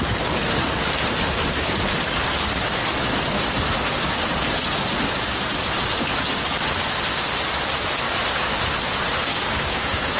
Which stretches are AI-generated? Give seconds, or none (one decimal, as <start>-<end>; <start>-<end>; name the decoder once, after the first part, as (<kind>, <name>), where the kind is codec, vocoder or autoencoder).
9.3-10.2 (codec, DAC)